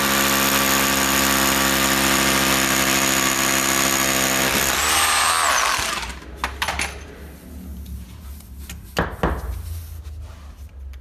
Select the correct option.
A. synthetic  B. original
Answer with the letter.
B